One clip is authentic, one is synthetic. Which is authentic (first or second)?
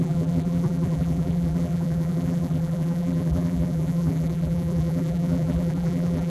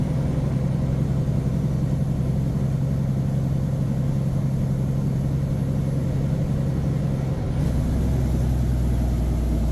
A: second